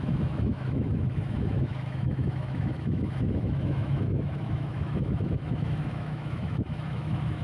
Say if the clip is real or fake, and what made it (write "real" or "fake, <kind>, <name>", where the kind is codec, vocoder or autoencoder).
fake, autoencoder, DAC-VAE